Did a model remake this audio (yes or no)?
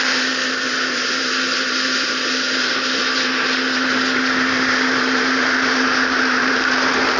yes